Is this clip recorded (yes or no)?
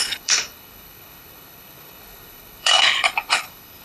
no